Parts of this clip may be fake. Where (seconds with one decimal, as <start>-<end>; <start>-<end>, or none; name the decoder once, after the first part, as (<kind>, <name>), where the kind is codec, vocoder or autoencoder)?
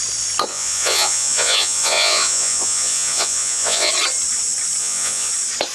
0.5-3.9 (vocoder, Vocos); 4.8-5.3